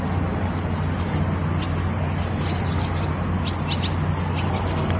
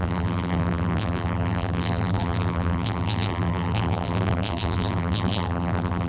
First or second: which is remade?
second